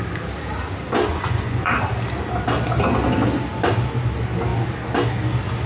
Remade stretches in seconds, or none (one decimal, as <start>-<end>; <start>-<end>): 1.1-1.7